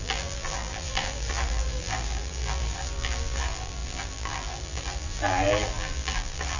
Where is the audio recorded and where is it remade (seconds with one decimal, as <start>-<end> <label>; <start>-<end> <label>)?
0.0-6.6 remade